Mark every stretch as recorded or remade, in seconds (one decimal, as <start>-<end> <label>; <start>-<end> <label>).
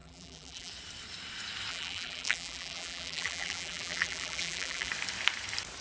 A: 0.0-0.7 remade; 0.7-1.7 recorded; 1.7-4.9 remade; 4.9-5.8 recorded